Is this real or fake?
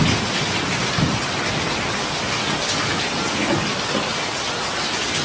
real